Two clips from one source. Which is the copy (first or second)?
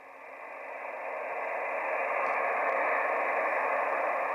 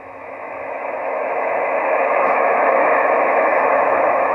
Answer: second